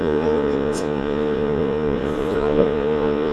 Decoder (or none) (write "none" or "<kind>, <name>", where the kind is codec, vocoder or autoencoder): vocoder, Vocos